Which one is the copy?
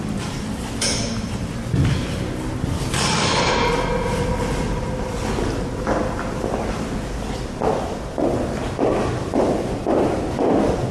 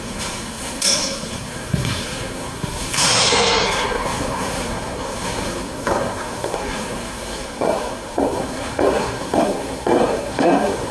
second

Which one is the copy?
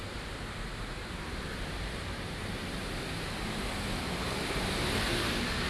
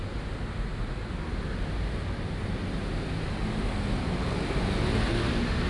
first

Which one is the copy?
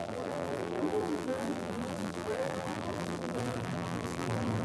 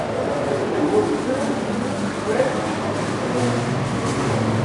first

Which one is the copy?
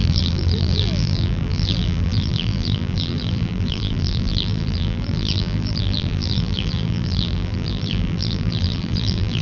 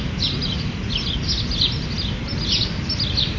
first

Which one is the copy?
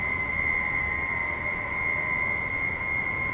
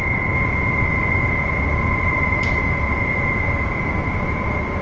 second